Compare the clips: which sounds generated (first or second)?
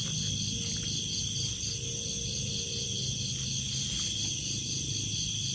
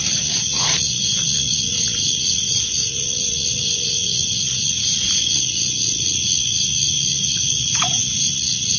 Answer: second